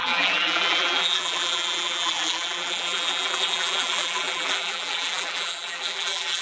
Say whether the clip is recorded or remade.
remade